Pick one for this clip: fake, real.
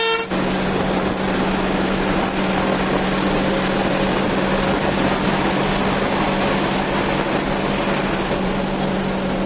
real